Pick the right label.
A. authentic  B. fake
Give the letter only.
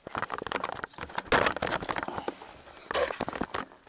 A